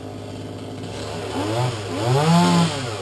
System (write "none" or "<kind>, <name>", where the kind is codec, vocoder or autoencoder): none